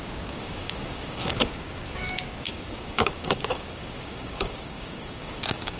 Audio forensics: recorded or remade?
remade